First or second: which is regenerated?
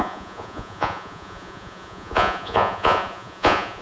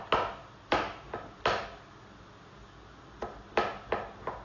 first